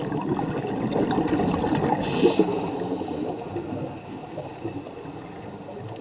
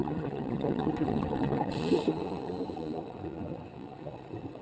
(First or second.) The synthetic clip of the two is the second